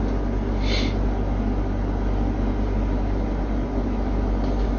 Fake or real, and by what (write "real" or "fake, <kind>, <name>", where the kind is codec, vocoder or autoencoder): real